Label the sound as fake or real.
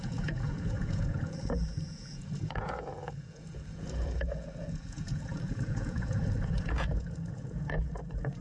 fake